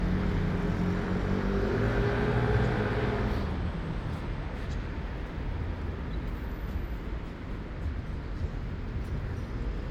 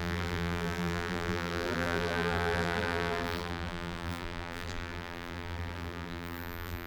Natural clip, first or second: first